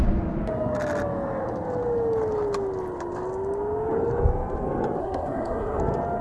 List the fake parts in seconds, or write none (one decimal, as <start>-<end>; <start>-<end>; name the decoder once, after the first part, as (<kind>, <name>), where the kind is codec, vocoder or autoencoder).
5.0-5.8 (codec, SNAC)